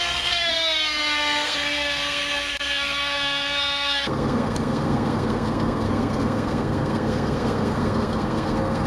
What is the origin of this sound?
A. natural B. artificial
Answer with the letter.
B